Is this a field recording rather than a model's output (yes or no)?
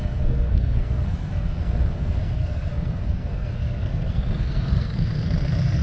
no